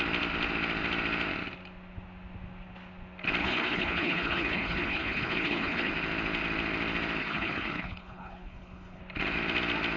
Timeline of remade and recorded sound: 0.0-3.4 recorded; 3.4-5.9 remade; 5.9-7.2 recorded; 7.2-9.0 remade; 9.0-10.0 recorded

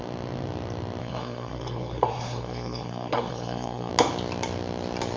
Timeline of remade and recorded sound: 0.0-1.0 recorded; 1.0-3.9 remade; 3.9-5.2 recorded

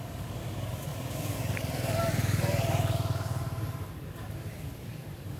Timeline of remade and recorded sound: 0.0-5.4 remade

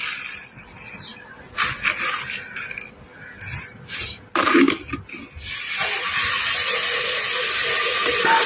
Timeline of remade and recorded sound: 0.0-8.5 recorded